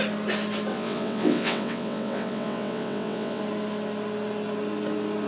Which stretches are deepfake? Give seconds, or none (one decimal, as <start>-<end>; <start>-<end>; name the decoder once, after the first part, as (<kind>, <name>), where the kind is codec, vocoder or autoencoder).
0.7-3.4 (vocoder, WaveNeXt)